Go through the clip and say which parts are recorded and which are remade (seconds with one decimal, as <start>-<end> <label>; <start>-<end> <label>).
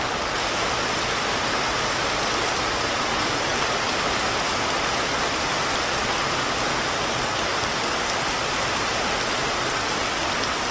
0.0-3.5 recorded; 3.5-4.2 remade; 4.2-10.7 recorded